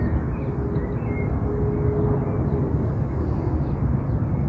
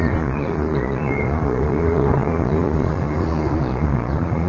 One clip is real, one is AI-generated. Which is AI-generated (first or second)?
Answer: second